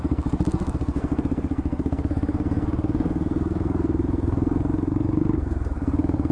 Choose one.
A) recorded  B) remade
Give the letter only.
B